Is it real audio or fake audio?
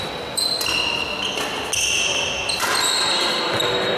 real